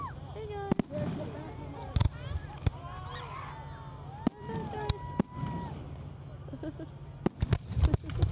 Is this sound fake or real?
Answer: real